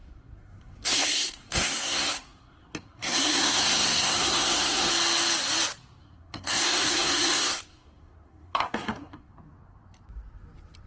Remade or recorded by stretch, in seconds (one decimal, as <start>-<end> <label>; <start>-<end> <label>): 0.0-4.9 remade; 4.9-6.0 recorded; 6.0-9.3 remade; 9.3-10.9 recorded